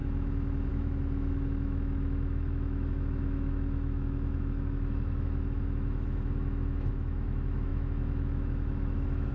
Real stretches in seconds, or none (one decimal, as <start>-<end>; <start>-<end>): none